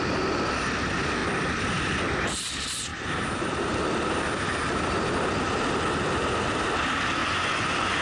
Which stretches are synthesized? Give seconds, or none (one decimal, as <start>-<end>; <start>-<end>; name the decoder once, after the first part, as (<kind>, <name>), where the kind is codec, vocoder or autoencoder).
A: 7.2-8.0 (vocoder, Vocos)